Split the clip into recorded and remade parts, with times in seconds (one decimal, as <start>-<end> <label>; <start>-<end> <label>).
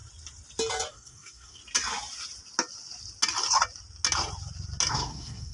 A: 0.0-0.9 recorded; 0.9-1.6 remade; 1.6-4.9 recorded; 4.9-5.5 remade